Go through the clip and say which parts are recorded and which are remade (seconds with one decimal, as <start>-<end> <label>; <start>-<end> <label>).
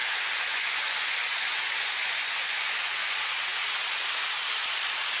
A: 0.0-3.1 remade; 3.1-5.2 recorded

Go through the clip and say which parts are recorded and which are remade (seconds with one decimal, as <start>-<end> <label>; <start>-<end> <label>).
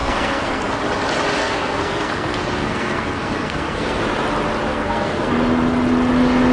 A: 0.0-0.8 remade; 0.8-1.4 recorded; 1.4-4.0 remade; 4.0-4.7 recorded; 4.7-5.3 remade; 5.3-6.5 recorded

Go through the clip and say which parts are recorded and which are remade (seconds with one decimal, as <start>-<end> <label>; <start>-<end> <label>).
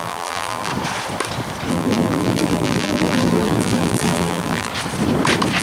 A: 0.0-0.7 remade; 0.7-1.7 recorded; 1.7-4.7 remade; 4.7-5.6 recorded